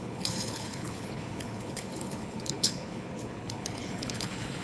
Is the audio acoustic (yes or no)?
no